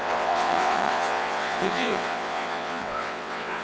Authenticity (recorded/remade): remade